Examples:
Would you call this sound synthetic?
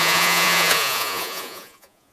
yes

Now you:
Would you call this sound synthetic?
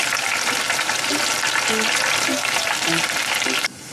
no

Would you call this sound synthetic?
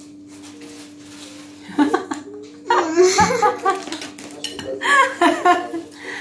no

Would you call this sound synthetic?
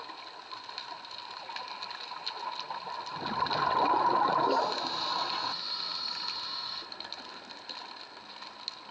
no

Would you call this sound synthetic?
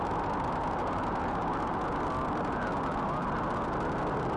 no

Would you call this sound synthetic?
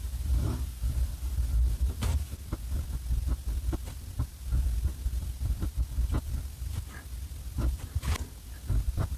yes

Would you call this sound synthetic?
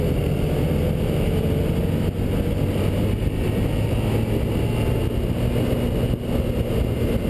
no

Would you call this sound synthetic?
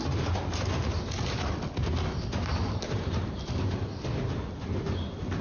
no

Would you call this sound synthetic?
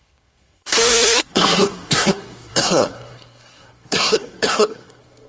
yes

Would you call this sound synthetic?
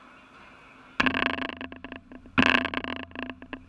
no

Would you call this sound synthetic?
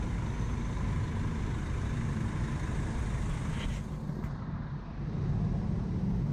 no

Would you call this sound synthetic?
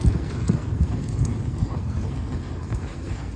yes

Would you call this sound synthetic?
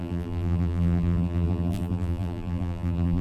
yes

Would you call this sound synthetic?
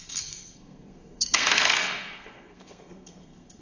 yes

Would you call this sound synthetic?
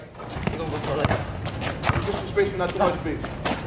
no